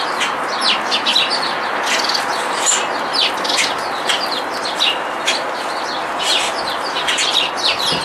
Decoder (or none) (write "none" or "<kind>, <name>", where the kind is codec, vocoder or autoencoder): none